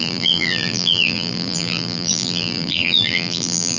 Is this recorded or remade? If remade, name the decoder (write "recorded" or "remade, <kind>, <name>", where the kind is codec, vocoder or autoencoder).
remade, vocoder, BigVGAN v2